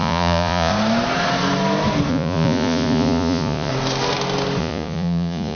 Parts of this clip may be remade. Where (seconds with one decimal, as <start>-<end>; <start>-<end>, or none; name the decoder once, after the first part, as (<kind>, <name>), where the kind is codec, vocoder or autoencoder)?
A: 0.0-0.7 (vocoder, Vocos); 2.1-3.7; 4.6-5.5